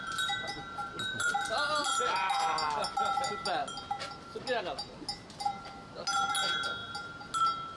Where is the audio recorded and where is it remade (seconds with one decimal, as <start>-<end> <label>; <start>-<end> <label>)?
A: 0.0-7.8 recorded